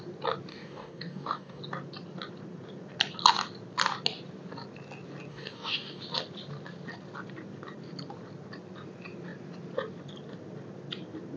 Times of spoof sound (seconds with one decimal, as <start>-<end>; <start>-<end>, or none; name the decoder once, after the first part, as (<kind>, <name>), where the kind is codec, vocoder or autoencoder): 0.5-1.6 (codec, DAC); 5.3-6.0